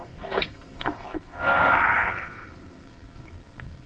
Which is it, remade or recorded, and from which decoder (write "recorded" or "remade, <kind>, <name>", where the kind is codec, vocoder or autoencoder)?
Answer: remade, codec, SNAC